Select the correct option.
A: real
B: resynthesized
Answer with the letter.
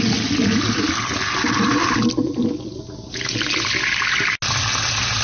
A